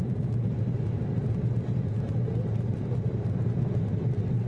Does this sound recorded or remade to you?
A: recorded